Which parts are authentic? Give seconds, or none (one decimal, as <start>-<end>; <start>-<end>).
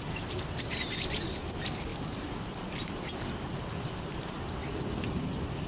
4.6-5.1